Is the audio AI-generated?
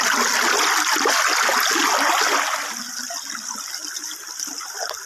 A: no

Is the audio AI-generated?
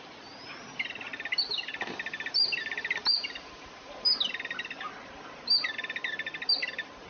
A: no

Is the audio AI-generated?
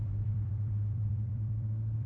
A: yes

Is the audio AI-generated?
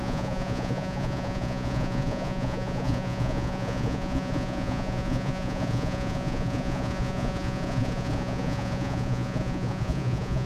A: yes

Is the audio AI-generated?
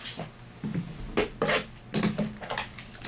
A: no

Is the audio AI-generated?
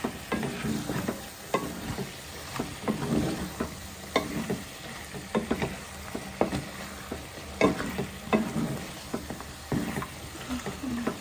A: no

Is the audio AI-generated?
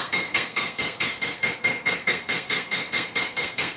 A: yes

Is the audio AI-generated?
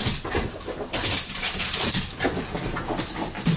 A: no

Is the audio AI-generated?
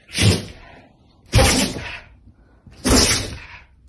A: no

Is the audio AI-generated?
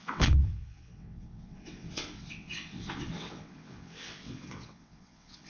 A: yes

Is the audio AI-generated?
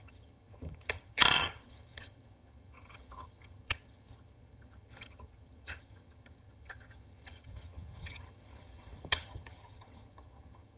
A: yes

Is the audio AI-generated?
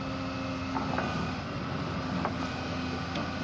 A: no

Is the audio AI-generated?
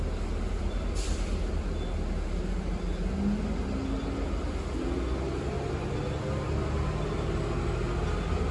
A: no